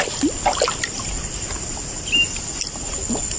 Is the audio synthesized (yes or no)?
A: no